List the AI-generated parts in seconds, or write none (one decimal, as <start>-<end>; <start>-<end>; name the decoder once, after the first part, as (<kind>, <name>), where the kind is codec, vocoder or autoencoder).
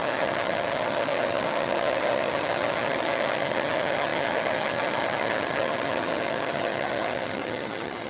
0.0-8.1 (vocoder, HiFi-GAN)